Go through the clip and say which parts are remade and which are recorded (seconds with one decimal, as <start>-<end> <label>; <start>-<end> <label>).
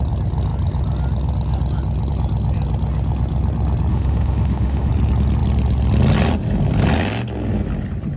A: 0.0-3.9 recorded; 3.9-4.9 remade; 4.9-8.2 recorded